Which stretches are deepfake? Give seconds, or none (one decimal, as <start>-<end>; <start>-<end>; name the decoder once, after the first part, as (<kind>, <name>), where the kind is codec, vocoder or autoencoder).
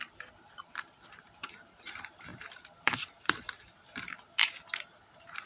0.0-5.5 (vocoder, BigVGAN v2)